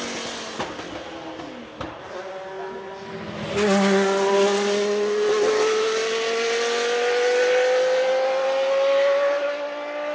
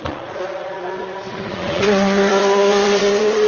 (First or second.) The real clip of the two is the first